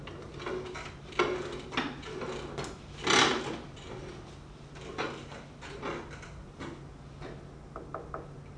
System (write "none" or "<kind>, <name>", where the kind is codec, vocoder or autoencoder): none